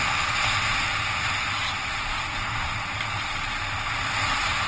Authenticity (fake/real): real